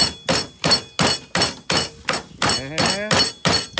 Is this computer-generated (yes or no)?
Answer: no